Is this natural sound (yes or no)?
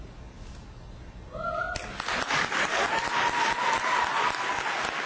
yes